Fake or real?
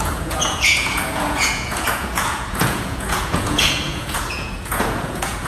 fake